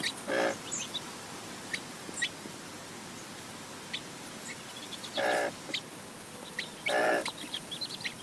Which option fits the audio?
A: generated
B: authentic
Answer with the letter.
B